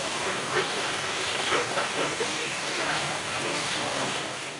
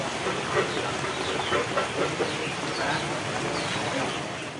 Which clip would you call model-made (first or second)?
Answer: first